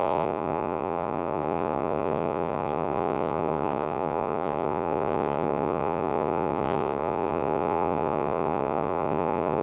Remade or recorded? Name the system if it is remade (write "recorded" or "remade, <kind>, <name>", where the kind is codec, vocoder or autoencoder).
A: remade, vocoder, Vocos